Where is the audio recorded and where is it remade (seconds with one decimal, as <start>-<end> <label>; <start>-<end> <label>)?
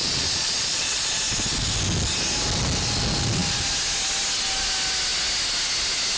0.0-1.2 remade; 1.2-6.2 recorded